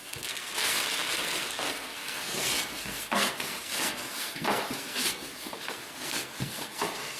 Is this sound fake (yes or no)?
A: yes